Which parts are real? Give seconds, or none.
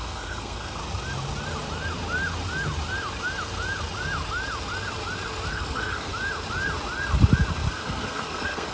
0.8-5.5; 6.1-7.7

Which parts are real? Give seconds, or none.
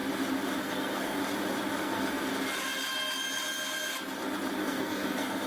0.0-0.6; 1.2-1.8; 2.3-4.6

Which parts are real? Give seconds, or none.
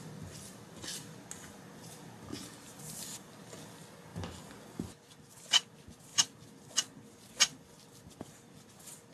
0.0-9.1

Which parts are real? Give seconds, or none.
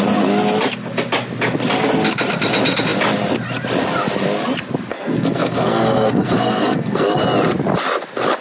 0.0-4.9; 7.2-8.4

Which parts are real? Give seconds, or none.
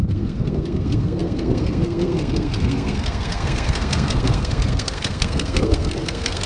none